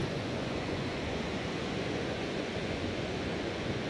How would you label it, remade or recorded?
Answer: remade